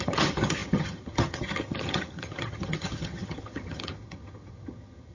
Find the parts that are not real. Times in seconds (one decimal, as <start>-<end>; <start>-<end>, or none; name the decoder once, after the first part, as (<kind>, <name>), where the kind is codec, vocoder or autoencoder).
0.0-5.1 (vocoder, HiFi-GAN)